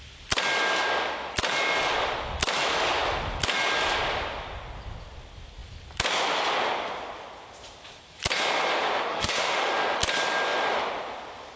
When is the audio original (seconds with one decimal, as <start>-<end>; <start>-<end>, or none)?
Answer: 0.0-9.1; 9.7-11.6